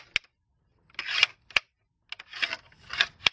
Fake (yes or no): no